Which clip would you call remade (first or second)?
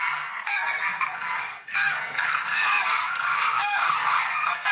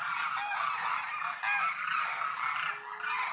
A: first